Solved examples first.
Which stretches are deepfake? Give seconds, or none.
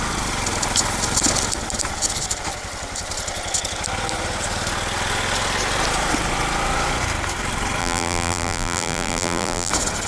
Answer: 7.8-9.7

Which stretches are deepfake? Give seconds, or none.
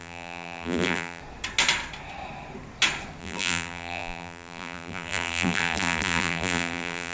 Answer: 0.0-1.2; 3.2-7.1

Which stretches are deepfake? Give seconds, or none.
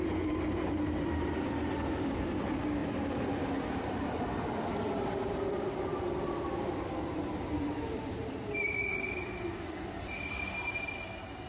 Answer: 0.0-11.5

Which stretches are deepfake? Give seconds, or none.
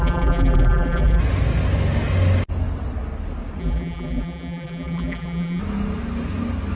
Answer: 0.0-1.2; 3.6-5.6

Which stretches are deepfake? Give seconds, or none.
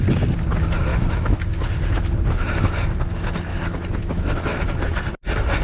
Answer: 0.9-2.3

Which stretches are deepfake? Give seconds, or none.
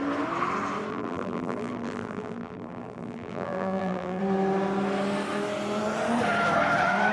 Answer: 0.9-4.2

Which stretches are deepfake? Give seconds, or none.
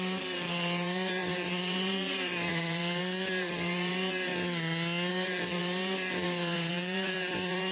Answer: 0.0-4.3; 5.1-7.7